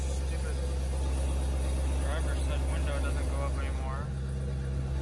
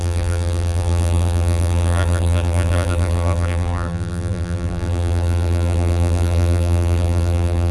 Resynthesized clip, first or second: second